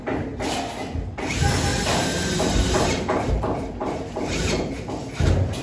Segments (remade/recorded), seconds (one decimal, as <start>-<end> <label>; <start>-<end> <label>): 0.0-1.7 recorded; 1.7-4.9 remade; 4.9-5.6 recorded